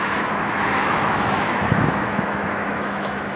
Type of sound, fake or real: fake